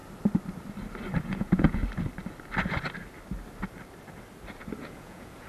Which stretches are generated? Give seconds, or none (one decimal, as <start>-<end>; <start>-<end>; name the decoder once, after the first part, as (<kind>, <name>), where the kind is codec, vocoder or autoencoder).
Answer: 1.2-1.8 (vocoder, Vocos); 4.8-5.5